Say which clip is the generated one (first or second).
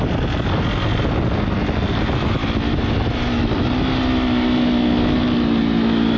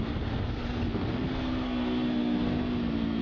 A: second